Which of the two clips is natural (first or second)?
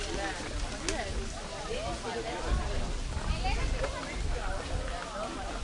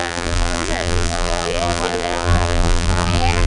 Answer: first